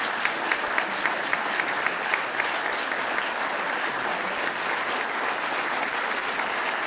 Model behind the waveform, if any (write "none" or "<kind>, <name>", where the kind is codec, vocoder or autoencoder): none